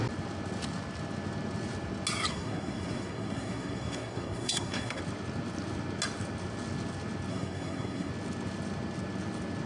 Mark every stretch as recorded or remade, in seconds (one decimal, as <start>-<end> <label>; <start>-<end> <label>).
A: 0.0-2.3 recorded; 2.3-5.0 remade; 5.0-7.3 recorded; 7.3-8.1 remade; 8.1-9.7 recorded